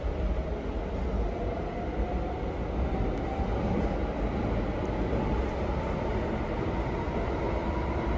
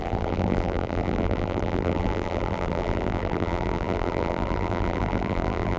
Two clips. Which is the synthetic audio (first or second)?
second